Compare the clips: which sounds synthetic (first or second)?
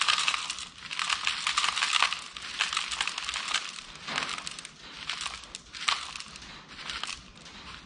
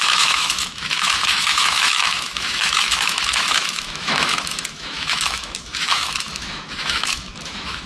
second